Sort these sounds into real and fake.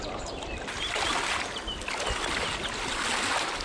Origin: real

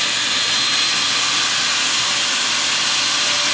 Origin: real